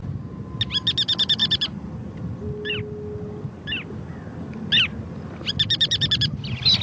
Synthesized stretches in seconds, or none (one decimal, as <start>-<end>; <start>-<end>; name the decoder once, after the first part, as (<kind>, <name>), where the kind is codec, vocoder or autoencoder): none